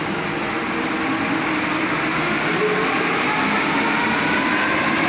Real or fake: real